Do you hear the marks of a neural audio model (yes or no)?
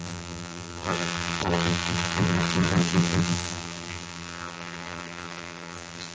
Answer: yes